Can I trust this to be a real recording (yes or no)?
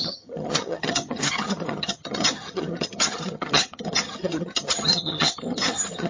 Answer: no